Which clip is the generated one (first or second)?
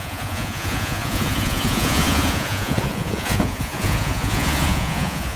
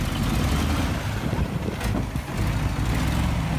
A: first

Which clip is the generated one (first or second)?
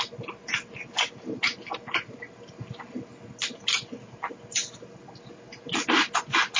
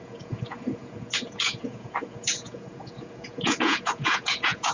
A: second